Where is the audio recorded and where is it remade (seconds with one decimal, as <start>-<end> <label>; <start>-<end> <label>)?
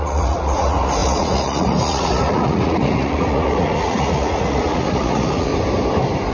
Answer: 0.0-5.5 remade; 5.5-6.3 recorded